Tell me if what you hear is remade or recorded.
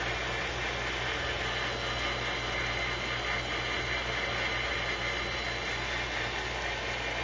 recorded